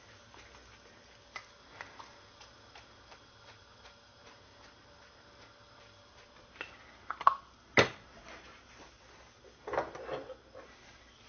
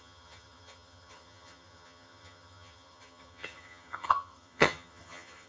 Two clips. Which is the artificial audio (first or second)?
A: second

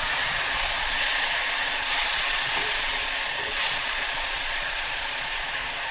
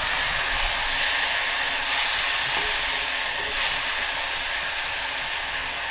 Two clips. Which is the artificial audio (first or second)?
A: first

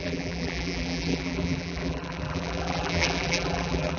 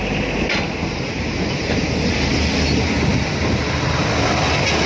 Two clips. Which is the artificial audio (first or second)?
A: first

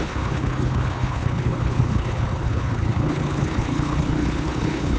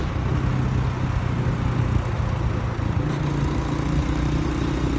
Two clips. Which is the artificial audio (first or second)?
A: first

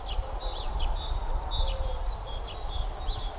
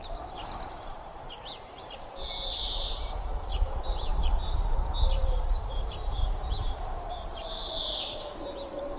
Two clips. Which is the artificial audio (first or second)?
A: second